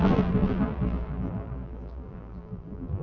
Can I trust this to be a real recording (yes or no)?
no